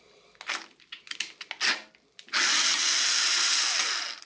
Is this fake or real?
real